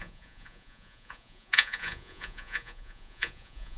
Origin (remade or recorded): remade